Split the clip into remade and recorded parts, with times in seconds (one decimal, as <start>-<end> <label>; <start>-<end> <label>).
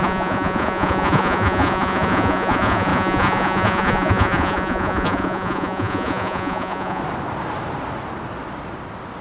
0.0-7.0 remade; 7.0-9.2 recorded